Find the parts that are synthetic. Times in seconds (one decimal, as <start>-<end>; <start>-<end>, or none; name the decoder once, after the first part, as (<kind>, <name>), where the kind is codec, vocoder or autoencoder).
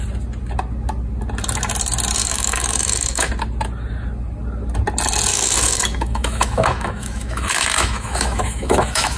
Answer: 2.2-3.3 (autoencoder, DAC-VAE); 5.3-9.2